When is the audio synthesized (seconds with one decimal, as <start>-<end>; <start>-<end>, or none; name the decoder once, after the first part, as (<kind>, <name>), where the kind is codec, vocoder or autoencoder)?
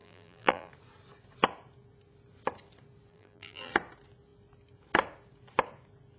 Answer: 0.0-0.7 (vocoder, BigVGAN v2); 3.1-3.7